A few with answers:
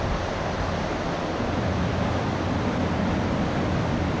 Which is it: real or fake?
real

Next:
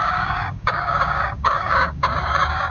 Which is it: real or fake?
fake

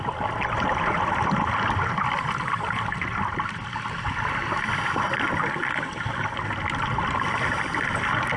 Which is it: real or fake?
real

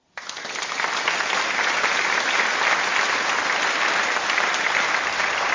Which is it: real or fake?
real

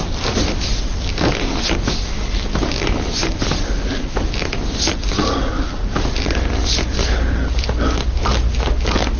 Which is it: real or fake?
real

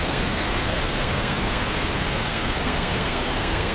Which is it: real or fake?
fake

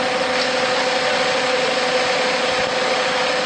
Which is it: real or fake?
real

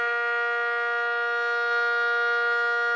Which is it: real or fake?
real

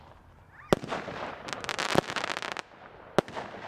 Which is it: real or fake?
real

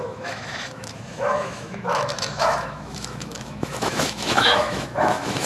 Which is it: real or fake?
fake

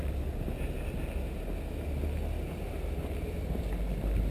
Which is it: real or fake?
real